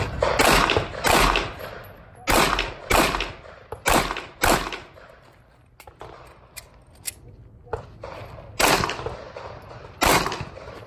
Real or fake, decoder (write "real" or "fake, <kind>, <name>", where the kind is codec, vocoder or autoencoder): real